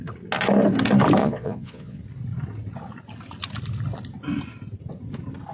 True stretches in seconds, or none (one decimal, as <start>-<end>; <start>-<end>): 0.0-1.2; 2.0-5.5